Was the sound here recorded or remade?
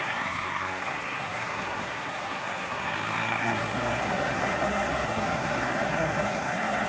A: remade